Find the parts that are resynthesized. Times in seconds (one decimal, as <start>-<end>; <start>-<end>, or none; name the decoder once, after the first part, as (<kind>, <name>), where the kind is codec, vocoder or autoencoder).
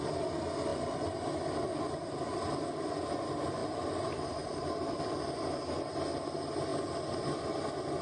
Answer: 0.7-1.4 (vocoder, BigVGAN v2); 3.6-5.3; 6.7-7.4